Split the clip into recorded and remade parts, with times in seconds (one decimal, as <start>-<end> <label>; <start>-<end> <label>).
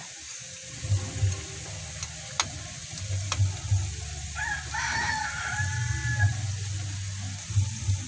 0.0-8.1 recorded